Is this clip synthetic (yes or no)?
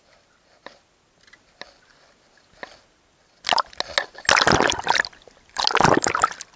no